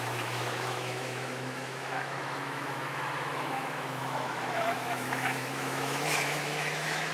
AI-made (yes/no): yes